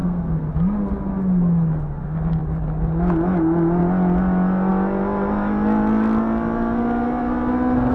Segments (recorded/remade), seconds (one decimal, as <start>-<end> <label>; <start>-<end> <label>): 0.0-0.5 remade; 0.5-7.9 recorded